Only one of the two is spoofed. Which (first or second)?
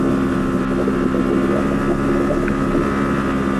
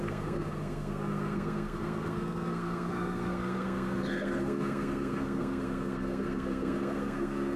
second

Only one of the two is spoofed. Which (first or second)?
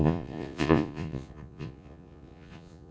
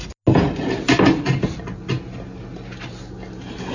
first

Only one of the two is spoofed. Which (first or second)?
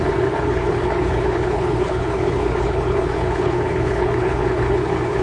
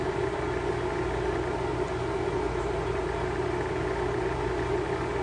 first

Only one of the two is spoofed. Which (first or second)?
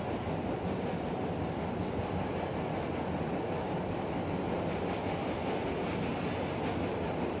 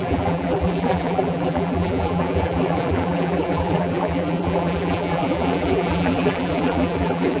second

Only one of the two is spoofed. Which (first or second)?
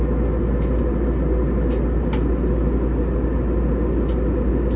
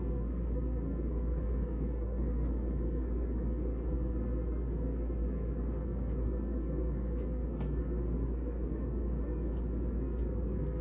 second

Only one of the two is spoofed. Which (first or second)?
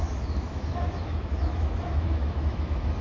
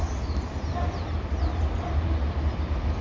first